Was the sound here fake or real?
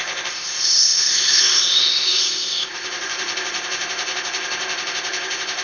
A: fake